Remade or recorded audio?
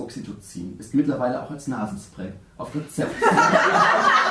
remade